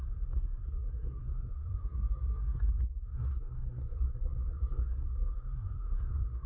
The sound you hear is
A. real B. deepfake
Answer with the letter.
B